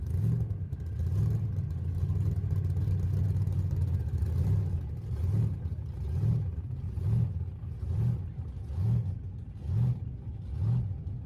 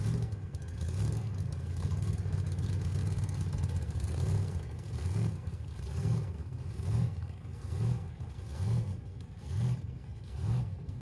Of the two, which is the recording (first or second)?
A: first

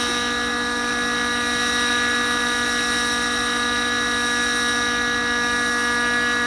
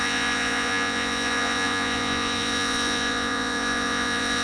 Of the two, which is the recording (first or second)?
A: first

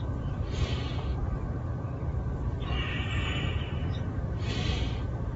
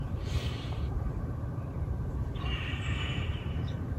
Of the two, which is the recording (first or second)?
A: first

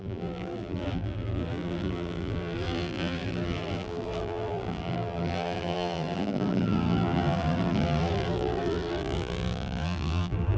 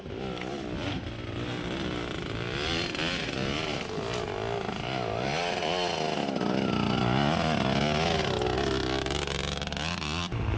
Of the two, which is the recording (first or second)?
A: second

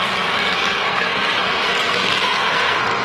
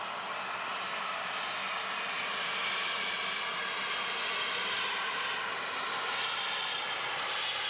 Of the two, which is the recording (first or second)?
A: second